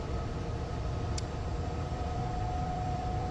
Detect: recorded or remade remade